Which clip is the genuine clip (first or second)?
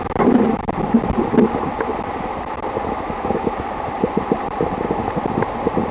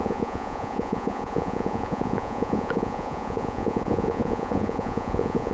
first